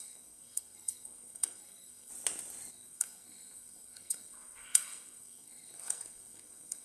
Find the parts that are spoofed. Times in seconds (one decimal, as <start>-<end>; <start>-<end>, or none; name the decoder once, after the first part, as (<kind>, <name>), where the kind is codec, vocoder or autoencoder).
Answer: 0.0-2.1 (codec, SNAC); 2.7-6.8